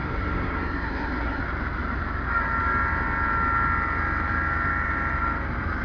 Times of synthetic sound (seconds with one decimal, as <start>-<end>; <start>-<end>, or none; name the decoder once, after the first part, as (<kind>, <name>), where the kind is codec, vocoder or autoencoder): 0.0-1.4 (codec, SNAC)